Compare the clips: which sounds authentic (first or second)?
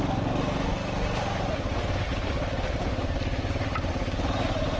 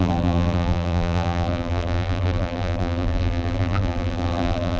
first